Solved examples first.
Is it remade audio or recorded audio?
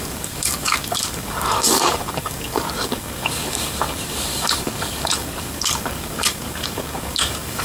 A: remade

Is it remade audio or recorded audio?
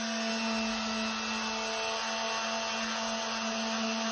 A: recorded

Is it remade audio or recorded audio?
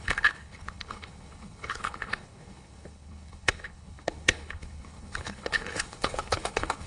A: remade